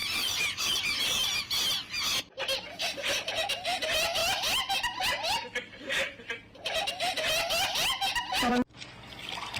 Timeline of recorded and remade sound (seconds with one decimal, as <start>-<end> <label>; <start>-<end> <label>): 0.0-1.4 remade; 1.4-9.6 recorded